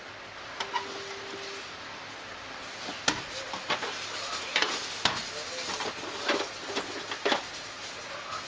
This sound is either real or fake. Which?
real